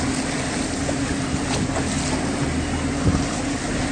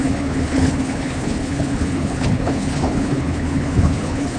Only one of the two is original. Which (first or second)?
first